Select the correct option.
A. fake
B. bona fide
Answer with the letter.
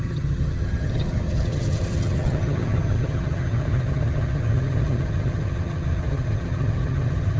A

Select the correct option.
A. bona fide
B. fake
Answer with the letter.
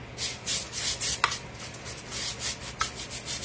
A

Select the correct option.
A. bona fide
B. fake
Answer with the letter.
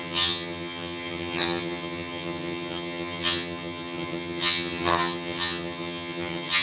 B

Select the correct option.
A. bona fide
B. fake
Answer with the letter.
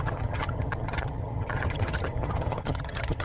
B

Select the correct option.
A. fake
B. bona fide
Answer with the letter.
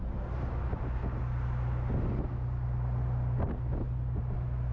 B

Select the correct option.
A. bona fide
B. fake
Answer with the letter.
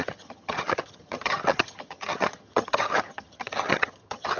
B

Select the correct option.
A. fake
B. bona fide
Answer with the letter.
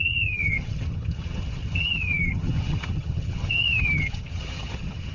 A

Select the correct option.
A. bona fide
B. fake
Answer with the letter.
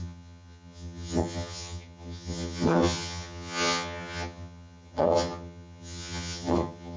B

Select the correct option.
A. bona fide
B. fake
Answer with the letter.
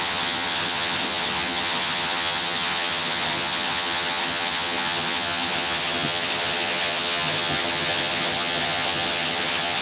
B